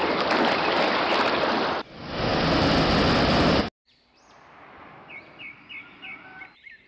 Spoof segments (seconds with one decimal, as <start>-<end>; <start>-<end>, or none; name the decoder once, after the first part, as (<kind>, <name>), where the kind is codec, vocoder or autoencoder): none